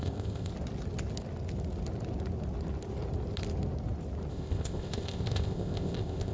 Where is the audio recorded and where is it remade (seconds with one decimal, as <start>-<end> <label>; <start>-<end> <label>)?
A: 0.0-0.5 remade; 0.5-4.3 recorded; 4.3-6.3 remade